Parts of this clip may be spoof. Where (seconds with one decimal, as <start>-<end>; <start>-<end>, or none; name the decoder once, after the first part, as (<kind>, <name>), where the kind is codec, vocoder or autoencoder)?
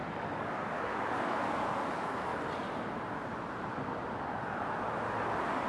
0.0-2.3 (codec, DAC)